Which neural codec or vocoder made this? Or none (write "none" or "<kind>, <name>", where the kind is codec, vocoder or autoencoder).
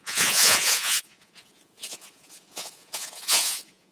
vocoder, Vocos